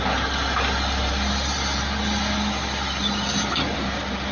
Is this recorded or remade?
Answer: recorded